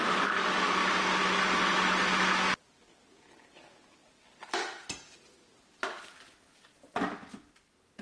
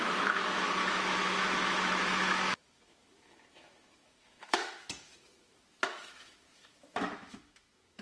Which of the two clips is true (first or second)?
first